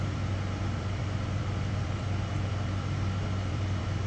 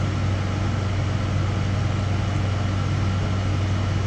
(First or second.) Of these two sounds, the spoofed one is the first